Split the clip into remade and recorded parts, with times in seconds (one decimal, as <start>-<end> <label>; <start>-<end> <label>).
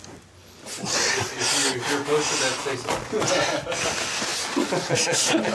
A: 0.0-5.5 recorded